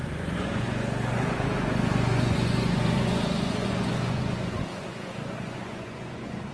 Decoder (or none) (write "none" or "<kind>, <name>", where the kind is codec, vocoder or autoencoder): vocoder, Vocos